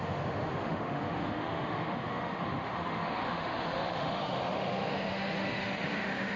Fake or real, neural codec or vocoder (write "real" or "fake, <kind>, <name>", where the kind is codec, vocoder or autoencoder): fake, autoencoder, DAC-VAE